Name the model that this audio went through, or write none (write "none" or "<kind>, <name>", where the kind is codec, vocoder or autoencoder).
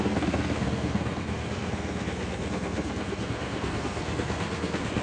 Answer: codec, SNAC